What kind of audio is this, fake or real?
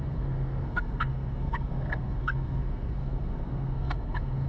fake